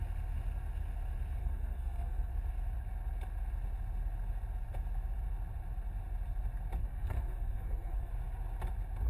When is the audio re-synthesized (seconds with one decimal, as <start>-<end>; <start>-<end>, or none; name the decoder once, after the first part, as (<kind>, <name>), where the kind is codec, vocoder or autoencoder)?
1.4-2.3 (codec, SNAC); 6.8-8.1